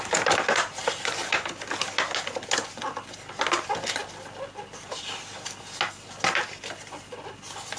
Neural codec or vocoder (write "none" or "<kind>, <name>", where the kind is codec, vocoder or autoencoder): none